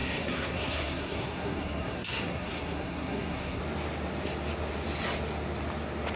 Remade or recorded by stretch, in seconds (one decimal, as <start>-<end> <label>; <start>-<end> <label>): 0.0-3.6 remade; 3.6-6.2 recorded